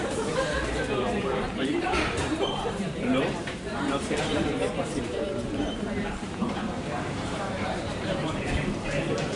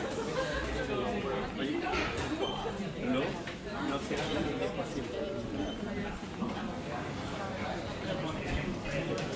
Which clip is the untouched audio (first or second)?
second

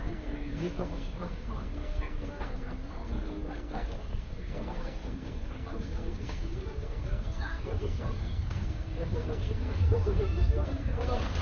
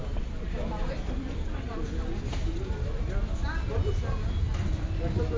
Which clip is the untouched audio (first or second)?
second